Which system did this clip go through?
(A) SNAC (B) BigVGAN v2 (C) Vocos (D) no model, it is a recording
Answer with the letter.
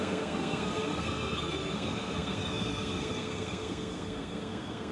A